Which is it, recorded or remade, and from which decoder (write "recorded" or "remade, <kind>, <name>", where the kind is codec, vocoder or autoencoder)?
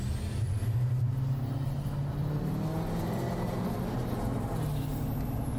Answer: recorded